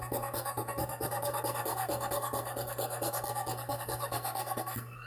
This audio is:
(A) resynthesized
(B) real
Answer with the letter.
A